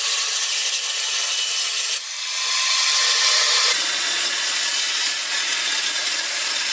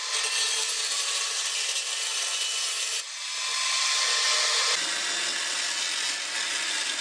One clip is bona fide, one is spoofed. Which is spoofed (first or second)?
first